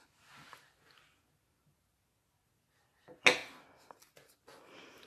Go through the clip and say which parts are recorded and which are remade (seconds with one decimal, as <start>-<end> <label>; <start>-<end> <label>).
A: 0.0-5.1 recorded